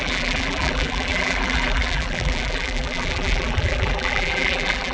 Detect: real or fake fake